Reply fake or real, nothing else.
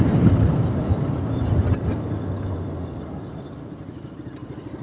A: fake